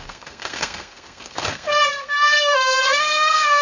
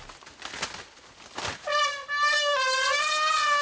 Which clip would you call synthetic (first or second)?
first